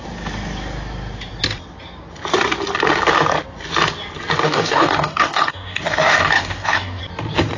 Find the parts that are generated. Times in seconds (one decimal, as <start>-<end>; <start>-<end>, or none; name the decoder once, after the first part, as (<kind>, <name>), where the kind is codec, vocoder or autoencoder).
4.4-7.0 (codec, DAC)